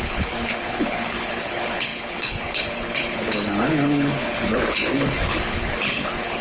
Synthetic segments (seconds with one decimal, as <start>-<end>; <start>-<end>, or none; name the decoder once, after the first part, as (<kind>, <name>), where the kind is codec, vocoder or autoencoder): 0.0-6.4 (codec, HILCodec)